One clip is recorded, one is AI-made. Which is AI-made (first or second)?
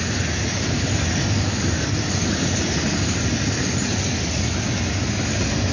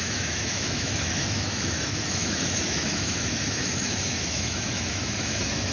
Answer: second